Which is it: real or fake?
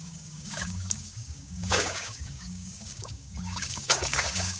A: fake